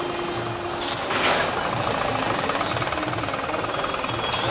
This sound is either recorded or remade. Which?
recorded